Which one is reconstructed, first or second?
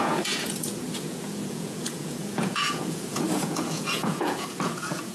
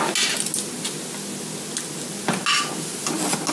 first